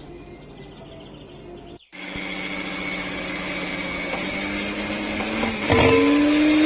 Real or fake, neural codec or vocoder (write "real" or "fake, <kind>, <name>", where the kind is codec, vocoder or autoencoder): real